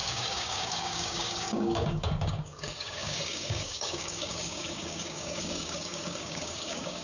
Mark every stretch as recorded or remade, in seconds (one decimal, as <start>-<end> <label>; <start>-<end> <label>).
0.0-7.0 remade